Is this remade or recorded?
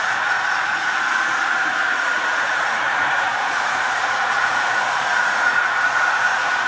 remade